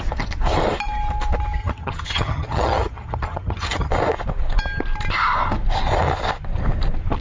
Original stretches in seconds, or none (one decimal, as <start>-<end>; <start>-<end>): 0.0-1.6; 3.9-7.2